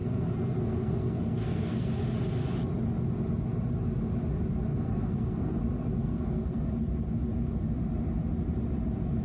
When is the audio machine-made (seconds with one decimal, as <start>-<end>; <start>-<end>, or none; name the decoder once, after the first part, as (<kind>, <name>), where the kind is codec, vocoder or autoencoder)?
0.0-1.9 (codec, SNAC); 4.7-5.6; 6.0-6.7